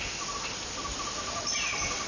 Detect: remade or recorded recorded